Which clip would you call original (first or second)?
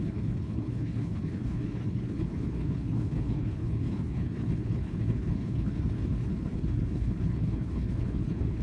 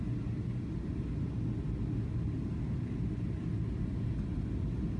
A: second